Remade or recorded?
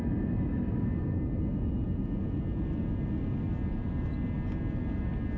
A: recorded